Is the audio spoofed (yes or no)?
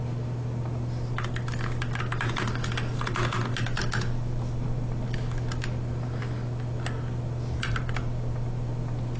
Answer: no